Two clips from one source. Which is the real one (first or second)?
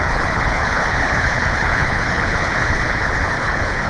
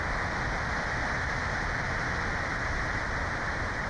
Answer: second